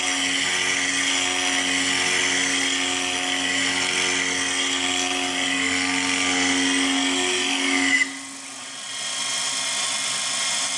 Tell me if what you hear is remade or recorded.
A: recorded